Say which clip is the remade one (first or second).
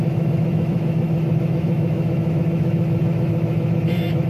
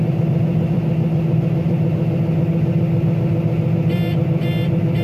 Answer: first